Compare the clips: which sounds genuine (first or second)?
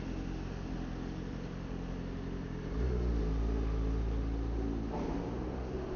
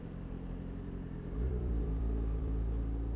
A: first